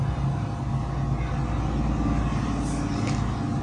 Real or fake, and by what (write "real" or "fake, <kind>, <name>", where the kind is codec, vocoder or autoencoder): real